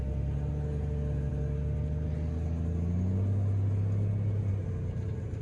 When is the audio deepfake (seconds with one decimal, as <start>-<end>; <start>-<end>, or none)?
none